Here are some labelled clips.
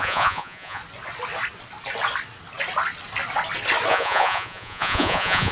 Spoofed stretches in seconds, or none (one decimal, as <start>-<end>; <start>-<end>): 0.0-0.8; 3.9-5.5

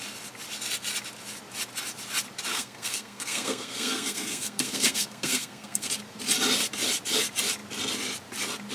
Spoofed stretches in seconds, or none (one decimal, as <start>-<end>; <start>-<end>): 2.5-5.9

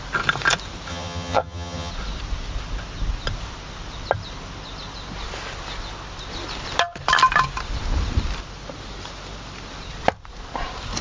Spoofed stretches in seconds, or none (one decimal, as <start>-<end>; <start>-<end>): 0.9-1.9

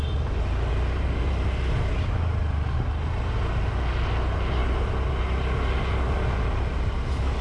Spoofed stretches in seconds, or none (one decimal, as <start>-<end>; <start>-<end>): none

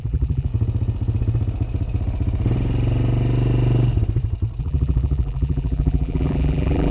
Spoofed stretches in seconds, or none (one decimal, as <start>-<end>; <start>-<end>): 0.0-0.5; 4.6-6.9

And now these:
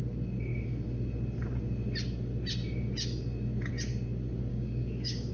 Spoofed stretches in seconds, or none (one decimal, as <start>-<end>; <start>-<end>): 4.5-5.3

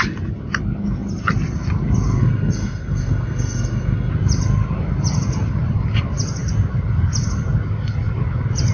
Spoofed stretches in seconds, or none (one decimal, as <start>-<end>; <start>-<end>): 2.2-4.1

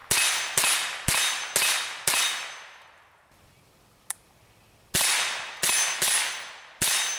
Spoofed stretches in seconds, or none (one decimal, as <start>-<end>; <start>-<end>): none